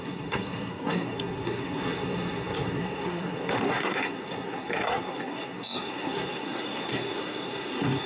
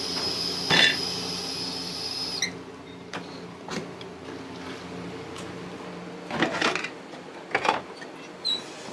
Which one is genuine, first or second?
second